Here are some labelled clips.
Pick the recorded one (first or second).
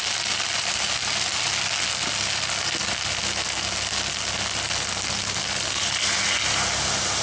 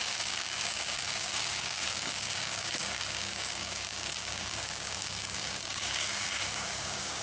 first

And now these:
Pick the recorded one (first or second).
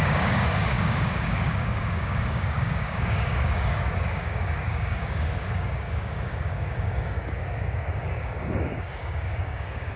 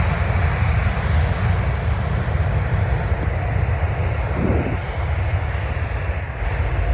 second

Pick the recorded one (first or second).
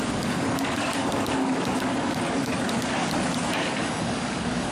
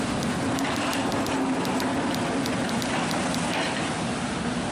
second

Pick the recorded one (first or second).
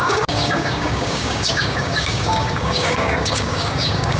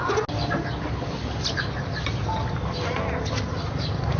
second